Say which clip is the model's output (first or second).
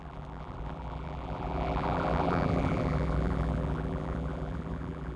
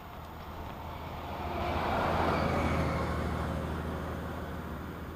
first